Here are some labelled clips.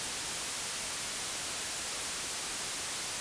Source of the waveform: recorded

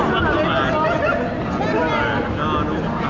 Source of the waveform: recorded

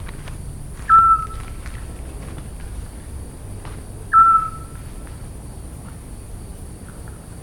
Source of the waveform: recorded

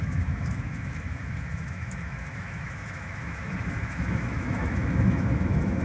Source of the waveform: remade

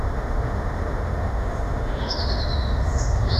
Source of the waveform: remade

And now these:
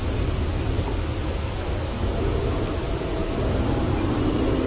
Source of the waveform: recorded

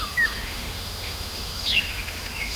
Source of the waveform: remade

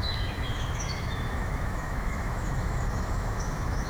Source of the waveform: remade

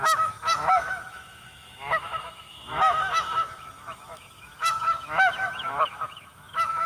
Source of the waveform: remade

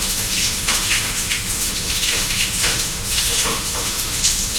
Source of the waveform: remade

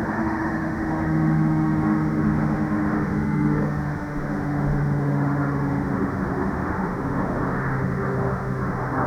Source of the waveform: remade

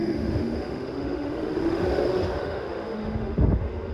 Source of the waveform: remade